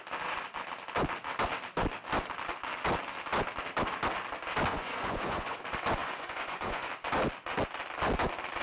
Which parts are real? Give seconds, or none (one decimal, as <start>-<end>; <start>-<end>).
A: 0.0-4.7; 5.6-6.0; 6.9-8.6